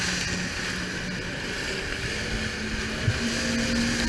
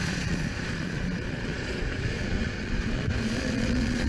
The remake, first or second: second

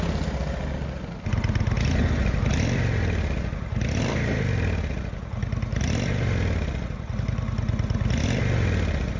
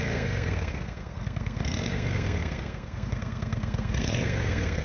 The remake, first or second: second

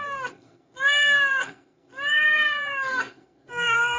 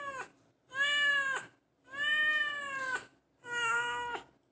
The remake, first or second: first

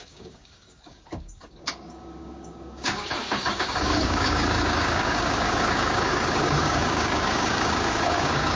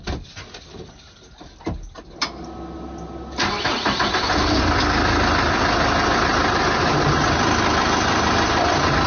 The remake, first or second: first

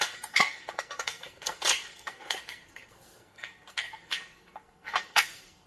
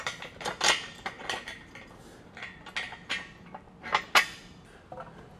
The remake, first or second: first